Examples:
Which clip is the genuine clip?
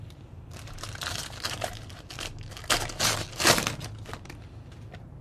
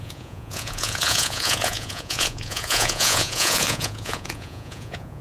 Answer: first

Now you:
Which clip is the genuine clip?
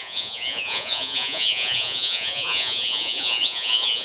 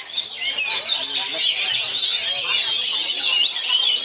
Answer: second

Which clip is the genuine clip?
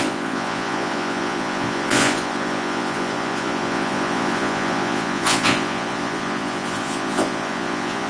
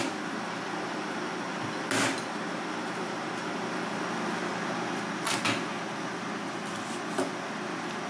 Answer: second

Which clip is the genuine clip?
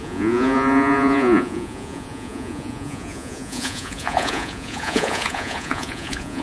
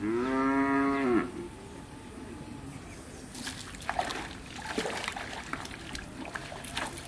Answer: second